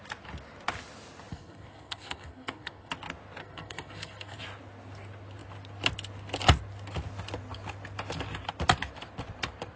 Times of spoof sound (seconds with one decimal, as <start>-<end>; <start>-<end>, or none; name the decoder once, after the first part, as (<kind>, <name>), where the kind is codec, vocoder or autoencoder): 1.3-2.9 (codec, SNAC); 3.4-4.4